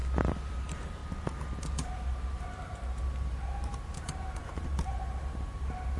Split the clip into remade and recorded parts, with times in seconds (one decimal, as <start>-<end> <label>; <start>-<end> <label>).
0.0-0.5 recorded; 0.5-1.0 remade; 1.0-1.6 recorded; 1.6-6.0 remade